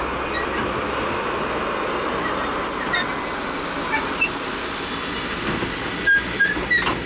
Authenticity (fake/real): real